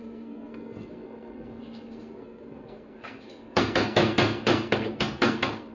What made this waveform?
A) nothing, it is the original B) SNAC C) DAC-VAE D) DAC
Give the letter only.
B